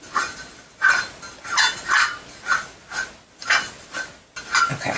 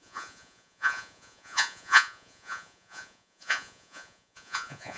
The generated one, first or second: second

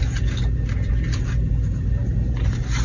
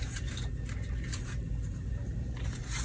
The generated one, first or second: second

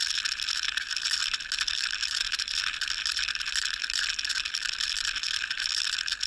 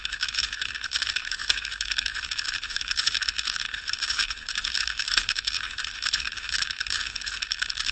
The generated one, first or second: second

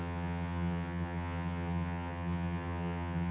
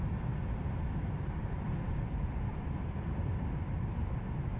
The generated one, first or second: first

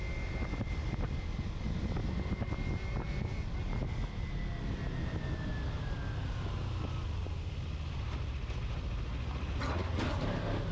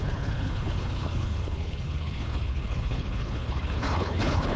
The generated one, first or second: second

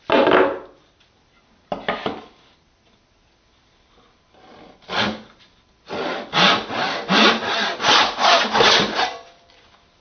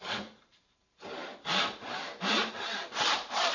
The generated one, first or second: second